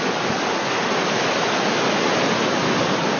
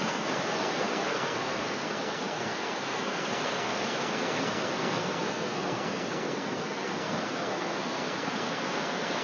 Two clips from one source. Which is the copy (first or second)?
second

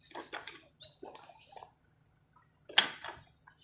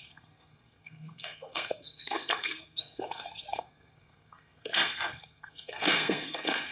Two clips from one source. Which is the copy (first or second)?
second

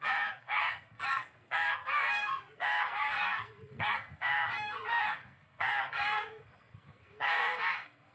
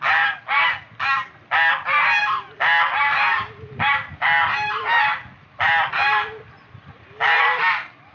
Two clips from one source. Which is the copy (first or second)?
first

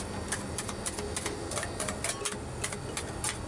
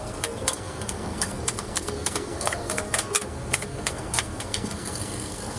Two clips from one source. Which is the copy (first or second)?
second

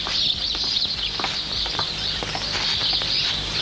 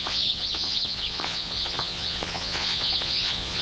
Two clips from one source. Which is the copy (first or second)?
second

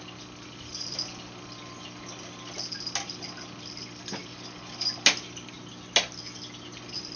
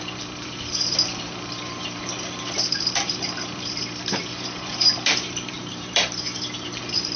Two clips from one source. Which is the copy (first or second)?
second